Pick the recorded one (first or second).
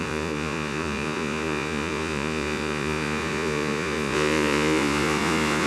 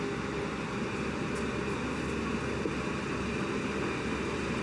second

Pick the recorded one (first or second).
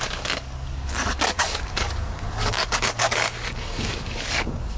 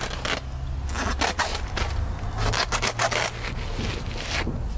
second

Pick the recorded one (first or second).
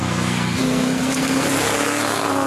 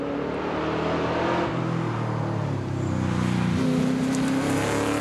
second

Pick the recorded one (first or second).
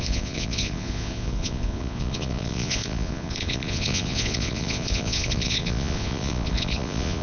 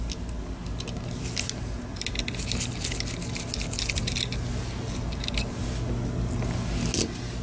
second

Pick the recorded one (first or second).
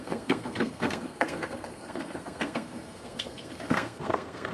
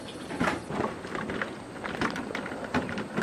second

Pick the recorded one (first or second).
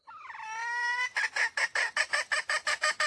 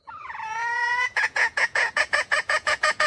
first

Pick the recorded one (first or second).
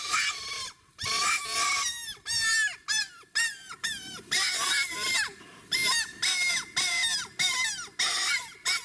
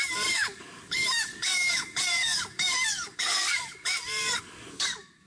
first